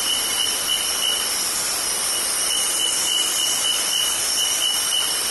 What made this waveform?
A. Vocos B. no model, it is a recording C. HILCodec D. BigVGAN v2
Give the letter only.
D